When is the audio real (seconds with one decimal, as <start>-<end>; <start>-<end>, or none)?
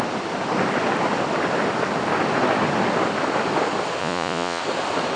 0.0-4.0; 4.6-5.2